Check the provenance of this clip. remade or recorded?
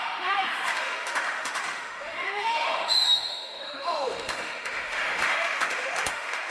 remade